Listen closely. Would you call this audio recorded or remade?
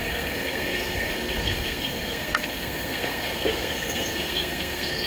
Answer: remade